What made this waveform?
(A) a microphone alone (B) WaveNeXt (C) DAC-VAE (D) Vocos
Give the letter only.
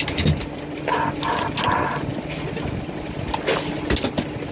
A